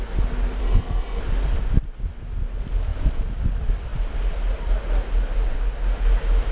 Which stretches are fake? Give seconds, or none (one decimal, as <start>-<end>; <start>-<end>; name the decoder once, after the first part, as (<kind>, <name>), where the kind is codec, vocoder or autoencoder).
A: 0.6-1.2 (codec, SNAC)